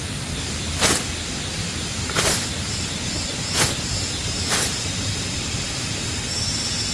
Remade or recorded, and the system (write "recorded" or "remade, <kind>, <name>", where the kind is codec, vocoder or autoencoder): recorded